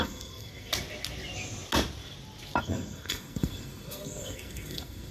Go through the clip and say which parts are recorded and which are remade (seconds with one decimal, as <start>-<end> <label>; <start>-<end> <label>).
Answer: 0.0-0.7 remade; 0.7-2.6 recorded; 2.6-5.1 remade